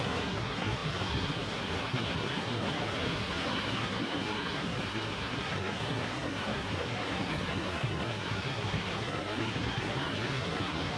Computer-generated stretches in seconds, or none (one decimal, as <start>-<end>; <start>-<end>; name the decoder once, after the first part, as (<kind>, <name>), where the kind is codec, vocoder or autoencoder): 0.0-11.0 (codec, SNAC)